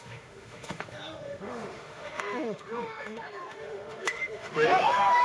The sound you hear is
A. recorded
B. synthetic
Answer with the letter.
B